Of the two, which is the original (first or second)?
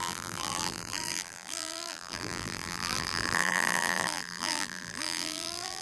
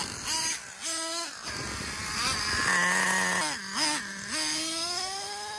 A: second